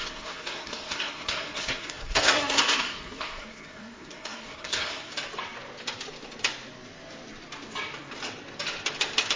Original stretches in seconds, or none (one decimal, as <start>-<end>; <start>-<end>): 5.1-9.4

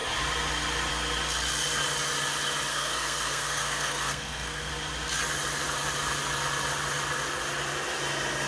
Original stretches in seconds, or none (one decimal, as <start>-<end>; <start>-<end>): 0.0-2.7; 4.7-8.5

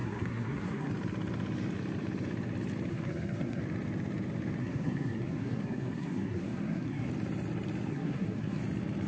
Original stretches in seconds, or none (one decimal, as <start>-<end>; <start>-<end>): 0.9-2.9; 3.6-4.6; 7.1-7.9; 8.6-9.1

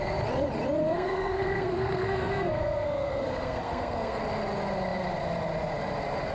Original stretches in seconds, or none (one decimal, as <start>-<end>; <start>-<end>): 0.0-0.8; 4.2-6.3

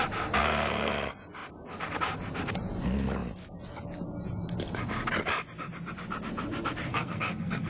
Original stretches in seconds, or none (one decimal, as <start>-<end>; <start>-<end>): 0.0-0.4; 0.9-6.9

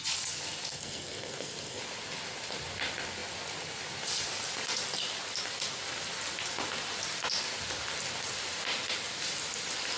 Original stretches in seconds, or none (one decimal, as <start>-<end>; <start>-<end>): 0.0-0.7; 1.8-10.0

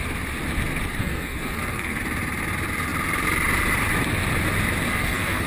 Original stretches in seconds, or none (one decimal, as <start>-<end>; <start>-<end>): 0.0-1.0; 2.0-4.9

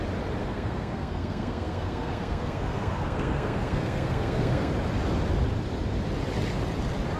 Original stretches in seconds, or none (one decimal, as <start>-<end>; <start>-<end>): 0.0-0.4; 4.7-7.2